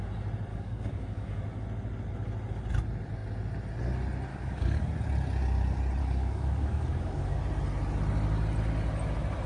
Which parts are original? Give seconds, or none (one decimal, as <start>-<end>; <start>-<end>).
0.0-0.5; 1.4-4.3; 4.9-6.0; 7.4-9.5